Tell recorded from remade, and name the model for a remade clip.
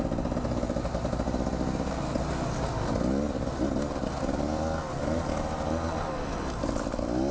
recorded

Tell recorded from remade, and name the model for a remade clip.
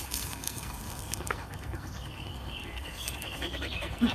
remade, codec, SNAC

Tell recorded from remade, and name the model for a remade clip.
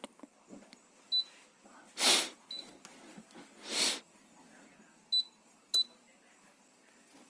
recorded